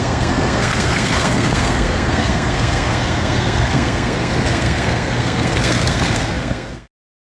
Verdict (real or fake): fake